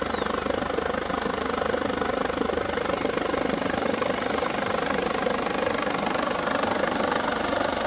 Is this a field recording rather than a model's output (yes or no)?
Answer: yes